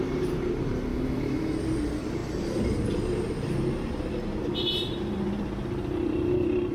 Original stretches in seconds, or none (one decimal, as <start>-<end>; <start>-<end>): 0.0-0.9; 1.6-6.7